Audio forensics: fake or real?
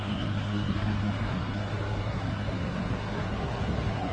fake